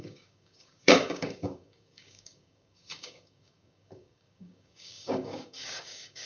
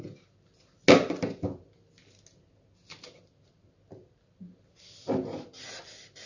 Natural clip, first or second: second